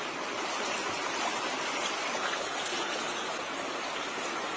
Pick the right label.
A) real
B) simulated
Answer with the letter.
A